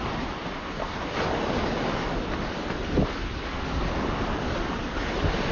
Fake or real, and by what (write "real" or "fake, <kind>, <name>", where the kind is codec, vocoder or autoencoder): real